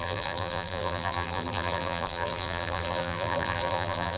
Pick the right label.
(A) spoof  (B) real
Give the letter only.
A